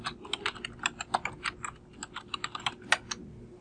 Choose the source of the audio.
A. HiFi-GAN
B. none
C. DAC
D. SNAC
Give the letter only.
B